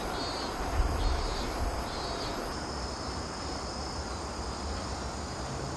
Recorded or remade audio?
remade